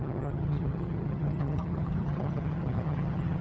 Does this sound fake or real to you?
fake